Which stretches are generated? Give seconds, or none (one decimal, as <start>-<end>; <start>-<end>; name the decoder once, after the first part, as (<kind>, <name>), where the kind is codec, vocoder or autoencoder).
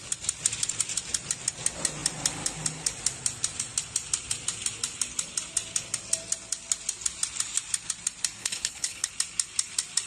8.4-9.1 (codec, HILCodec)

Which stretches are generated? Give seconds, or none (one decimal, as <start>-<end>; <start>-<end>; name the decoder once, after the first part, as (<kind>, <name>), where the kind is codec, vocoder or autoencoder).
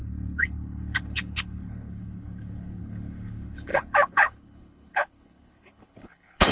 0.0-6.5 (codec, HILCodec)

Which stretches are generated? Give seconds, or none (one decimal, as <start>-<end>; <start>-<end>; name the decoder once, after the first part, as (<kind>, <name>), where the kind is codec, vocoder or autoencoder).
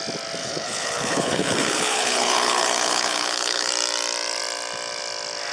0.4-3.7 (codec, HILCodec)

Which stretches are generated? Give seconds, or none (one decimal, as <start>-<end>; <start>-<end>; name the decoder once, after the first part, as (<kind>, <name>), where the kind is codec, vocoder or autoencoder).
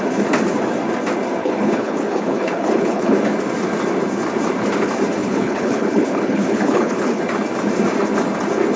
1.4-3.1 (codec, HILCodec); 5.2-7.2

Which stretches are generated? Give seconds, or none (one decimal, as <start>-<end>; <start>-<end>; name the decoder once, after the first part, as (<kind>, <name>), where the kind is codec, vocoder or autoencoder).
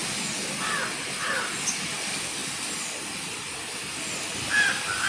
none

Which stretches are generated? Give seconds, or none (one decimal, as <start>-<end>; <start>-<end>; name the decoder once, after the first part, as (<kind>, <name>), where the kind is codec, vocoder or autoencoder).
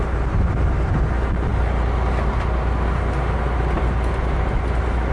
none